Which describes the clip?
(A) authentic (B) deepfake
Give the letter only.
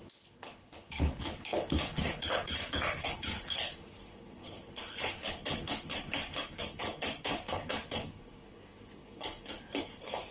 B